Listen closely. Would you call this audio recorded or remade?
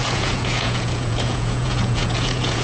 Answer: remade